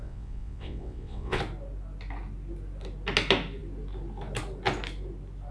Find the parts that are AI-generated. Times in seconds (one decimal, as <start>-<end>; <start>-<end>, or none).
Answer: 0.0-1.4